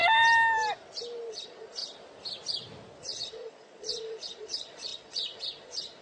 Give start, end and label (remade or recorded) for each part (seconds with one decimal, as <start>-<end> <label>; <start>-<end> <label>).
0.0-1.3 recorded; 1.3-1.8 remade; 1.8-3.0 recorded; 3.0-6.0 remade